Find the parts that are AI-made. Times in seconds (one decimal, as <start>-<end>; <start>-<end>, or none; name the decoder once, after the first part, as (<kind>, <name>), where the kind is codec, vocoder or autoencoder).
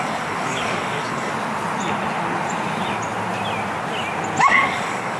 0.0-1.3 (codec, DAC); 4.4-5.2